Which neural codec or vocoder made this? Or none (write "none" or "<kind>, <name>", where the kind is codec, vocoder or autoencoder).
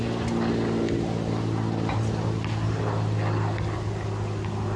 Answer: none